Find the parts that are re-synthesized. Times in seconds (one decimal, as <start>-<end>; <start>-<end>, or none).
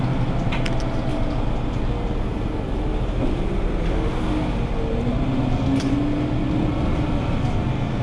none